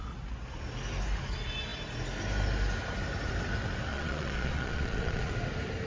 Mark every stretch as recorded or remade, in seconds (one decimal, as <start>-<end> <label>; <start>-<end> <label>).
0.0-3.9 recorded; 3.9-5.3 remade; 5.3-5.9 recorded